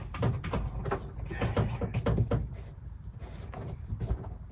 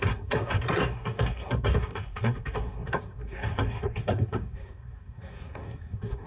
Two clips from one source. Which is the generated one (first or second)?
second